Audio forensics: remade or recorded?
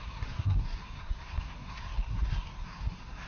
remade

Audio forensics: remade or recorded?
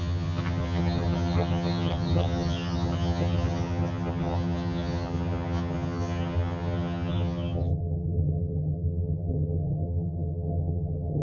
remade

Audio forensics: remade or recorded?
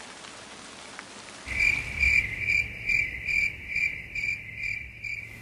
recorded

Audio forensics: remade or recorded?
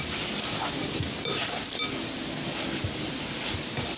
recorded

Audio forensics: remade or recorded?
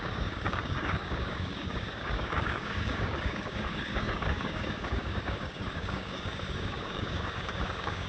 remade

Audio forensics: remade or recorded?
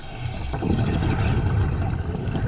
recorded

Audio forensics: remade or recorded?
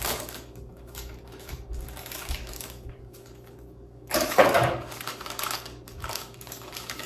remade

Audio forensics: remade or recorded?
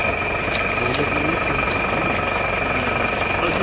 recorded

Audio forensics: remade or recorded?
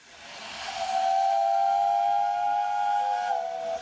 recorded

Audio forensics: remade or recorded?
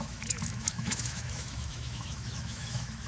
remade